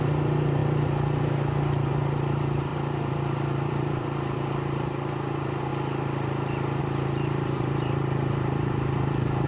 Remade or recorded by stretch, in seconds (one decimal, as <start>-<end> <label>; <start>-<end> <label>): 0.0-0.6 remade; 0.6-1.9 recorded; 1.9-5.7 remade; 5.7-6.8 recorded; 6.8-9.5 remade